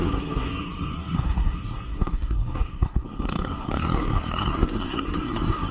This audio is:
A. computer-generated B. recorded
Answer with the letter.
A